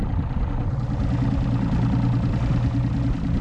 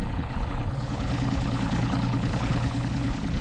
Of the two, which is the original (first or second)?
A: first